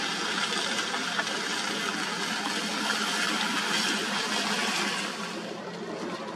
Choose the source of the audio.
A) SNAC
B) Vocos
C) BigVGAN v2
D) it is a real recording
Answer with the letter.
D